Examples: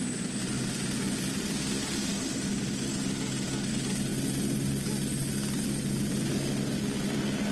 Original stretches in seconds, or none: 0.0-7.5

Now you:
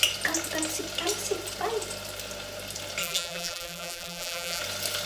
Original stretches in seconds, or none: 0.0-3.0; 4.6-5.1

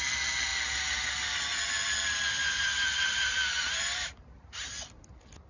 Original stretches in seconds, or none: 0.0-2.4; 4.5-5.5